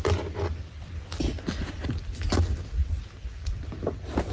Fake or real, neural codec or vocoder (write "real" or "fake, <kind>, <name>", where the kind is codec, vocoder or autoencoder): real